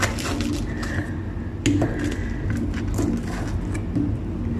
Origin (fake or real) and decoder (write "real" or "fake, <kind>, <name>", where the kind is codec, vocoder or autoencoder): real